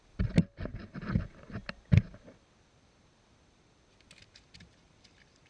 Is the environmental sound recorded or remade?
recorded